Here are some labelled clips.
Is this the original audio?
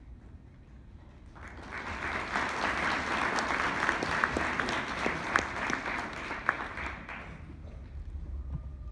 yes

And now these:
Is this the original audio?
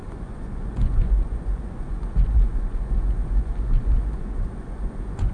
no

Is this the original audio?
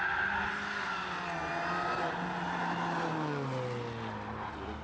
yes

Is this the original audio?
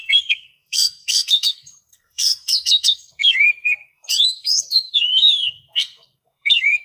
no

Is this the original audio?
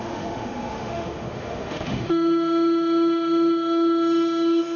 no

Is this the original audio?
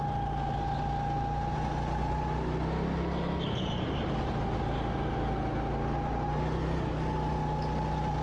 yes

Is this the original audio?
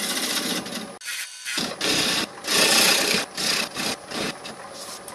yes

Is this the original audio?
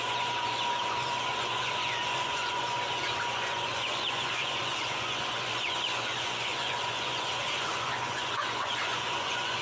no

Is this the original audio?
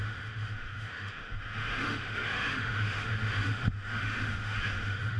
no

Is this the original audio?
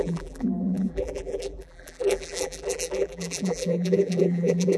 no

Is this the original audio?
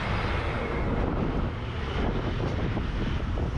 yes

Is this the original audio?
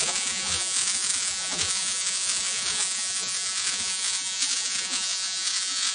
no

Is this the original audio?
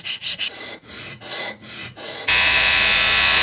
no